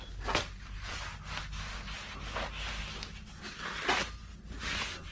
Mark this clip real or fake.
real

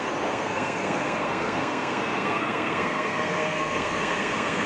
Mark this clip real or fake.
fake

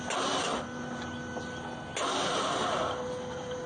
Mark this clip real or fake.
real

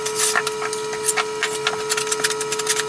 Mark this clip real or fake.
real